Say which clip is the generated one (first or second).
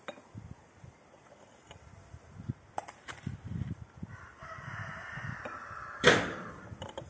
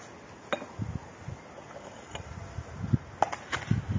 first